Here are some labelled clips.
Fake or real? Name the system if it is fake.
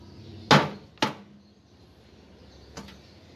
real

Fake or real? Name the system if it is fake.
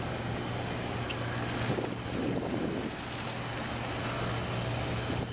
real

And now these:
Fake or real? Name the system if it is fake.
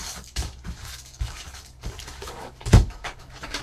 fake, codec, DAC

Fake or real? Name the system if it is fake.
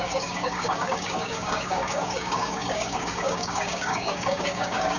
fake, codec, DAC